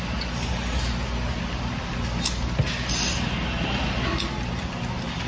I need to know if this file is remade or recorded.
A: recorded